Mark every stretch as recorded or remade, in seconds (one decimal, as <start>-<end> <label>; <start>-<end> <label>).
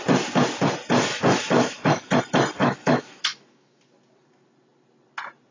0.0-1.1 recorded; 1.1-2.2 remade; 2.2-2.6 recorded; 2.6-3.8 remade; 3.8-5.5 recorded